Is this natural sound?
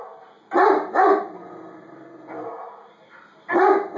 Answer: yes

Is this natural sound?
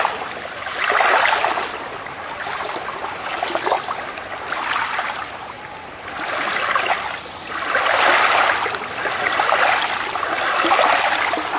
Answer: yes